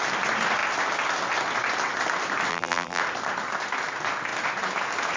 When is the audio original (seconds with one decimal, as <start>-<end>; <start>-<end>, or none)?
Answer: 0.0-2.5; 3.0-5.2